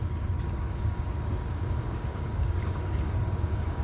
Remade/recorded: remade